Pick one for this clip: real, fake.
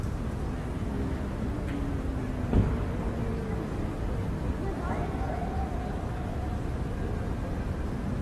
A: real